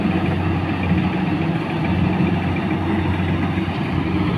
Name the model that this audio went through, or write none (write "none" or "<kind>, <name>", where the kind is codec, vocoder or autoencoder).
none